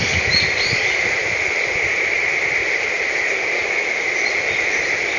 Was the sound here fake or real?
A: real